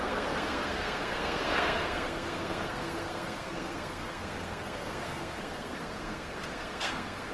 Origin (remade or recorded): remade